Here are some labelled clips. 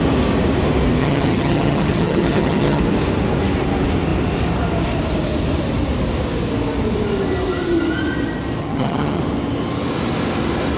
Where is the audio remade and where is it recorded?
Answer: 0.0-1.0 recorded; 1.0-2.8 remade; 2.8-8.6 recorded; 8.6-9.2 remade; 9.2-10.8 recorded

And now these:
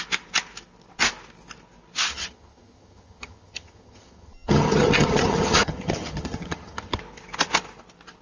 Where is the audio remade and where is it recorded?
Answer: 0.0-2.1 recorded; 2.1-7.0 remade; 7.0-8.2 recorded

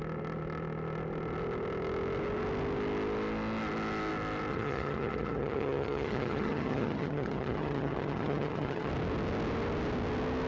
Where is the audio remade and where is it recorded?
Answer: 0.0-4.5 recorded; 4.5-8.9 remade; 8.9-10.5 recorded

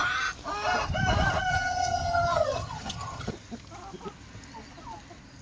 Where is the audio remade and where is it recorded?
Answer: 0.0-1.5 recorded; 1.5-3.3 remade; 3.3-5.4 recorded